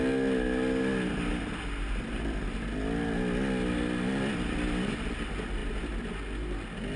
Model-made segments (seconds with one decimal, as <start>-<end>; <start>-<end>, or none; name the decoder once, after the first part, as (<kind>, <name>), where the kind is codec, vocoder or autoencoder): none